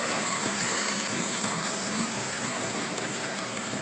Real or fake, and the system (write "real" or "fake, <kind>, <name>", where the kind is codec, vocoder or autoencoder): fake, codec, SNAC